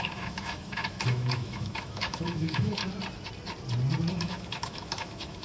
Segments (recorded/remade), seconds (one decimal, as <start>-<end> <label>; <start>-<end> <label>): 0.0-2.8 remade; 2.8-4.1 recorded; 4.1-5.4 remade